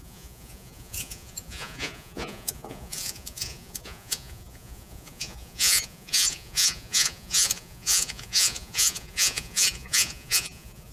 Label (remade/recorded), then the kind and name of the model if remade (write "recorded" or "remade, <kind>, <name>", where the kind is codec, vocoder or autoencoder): remade, vocoder, Vocos